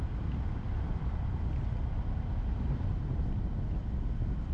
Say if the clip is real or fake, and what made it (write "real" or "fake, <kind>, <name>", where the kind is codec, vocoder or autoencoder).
real